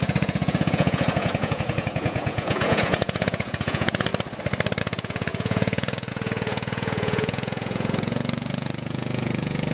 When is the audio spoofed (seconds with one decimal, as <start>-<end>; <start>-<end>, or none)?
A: 0.0-4.1; 4.8-9.7